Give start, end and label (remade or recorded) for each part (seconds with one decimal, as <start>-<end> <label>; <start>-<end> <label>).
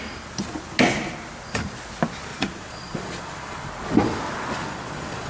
0.0-2.3 recorded; 2.3-3.7 remade; 3.7-4.6 recorded; 4.6-5.3 remade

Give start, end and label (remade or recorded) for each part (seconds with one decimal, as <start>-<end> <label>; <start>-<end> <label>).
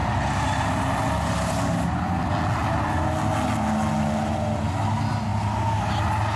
0.0-6.4 recorded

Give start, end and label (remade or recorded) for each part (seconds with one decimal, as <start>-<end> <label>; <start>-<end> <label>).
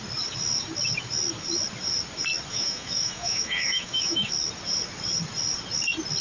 0.0-2.5 recorded; 2.5-4.3 remade; 4.3-6.2 recorded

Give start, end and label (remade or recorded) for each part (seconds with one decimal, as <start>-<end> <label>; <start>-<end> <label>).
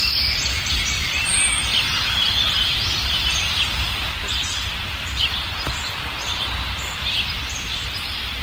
0.0-8.4 recorded